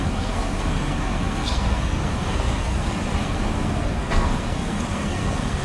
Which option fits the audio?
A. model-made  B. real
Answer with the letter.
A